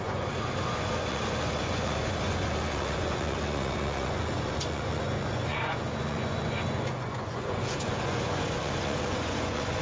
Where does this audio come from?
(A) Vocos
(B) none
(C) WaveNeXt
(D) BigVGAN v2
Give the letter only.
A